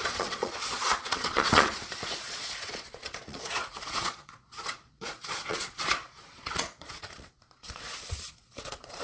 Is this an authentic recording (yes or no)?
no